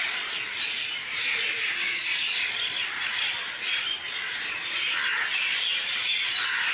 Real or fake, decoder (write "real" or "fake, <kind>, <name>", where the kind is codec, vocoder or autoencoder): real